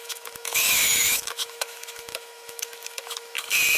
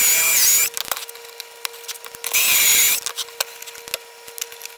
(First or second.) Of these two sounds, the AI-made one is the first